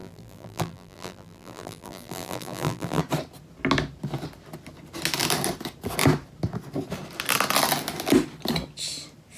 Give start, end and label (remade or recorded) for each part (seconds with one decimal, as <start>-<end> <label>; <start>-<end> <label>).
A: 0.0-3.0 remade; 3.0-9.4 recorded